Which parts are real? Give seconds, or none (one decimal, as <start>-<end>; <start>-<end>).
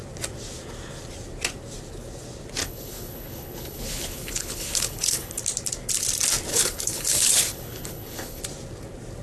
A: 0.0-2.6; 5.4-6.5; 8.4-9.2